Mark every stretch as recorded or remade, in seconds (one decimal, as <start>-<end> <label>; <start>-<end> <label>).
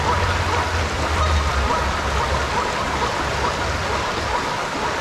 0.0-5.0 recorded